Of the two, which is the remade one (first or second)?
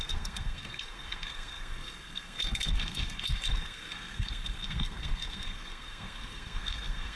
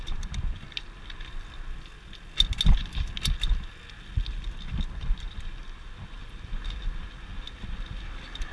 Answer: first